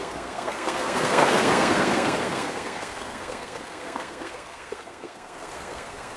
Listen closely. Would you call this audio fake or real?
fake